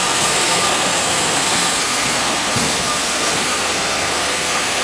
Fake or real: fake